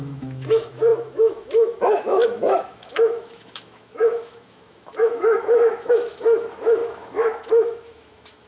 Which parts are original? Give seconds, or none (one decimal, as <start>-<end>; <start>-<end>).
none